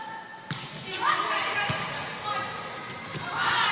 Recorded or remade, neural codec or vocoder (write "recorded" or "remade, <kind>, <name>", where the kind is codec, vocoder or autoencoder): recorded